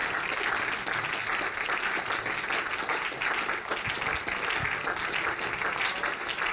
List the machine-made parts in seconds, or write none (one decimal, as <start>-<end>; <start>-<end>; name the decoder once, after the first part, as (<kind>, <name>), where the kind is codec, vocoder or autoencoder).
none